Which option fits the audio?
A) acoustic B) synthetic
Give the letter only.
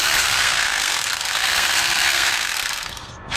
B